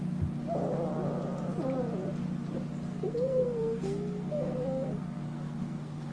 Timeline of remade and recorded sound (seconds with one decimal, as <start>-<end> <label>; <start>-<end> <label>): 0.0-2.9 recorded; 2.9-6.1 remade